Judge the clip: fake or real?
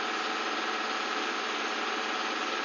real